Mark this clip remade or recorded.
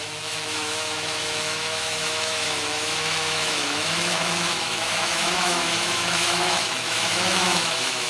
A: remade